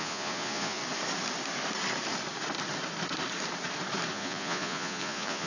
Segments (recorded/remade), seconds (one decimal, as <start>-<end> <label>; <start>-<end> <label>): 0.0-0.8 remade; 0.8-4.1 recorded; 4.1-5.5 remade

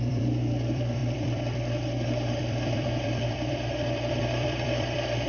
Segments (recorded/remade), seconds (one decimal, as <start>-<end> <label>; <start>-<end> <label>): 0.0-5.3 remade